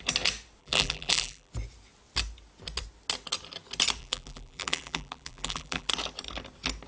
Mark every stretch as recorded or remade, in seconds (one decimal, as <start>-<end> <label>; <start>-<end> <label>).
0.0-0.6 recorded; 0.6-1.5 remade; 1.5-4.0 recorded; 4.0-5.9 remade; 5.9-6.9 recorded